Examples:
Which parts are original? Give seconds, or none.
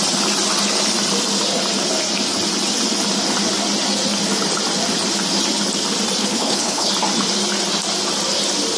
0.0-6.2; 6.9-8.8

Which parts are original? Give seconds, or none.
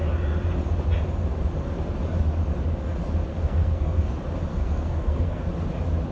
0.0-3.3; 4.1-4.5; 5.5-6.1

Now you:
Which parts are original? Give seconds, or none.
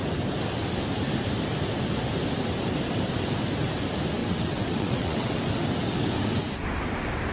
0.0-4.2; 5.4-7.3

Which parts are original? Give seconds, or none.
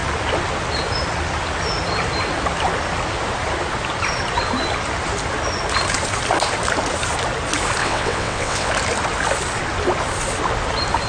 0.0-7.8; 8.7-11.1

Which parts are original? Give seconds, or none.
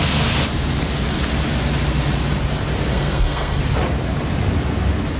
0.0-2.9; 3.6-5.2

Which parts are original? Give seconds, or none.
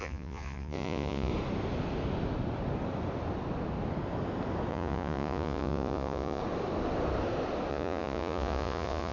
1.3-4.7; 6.4-7.7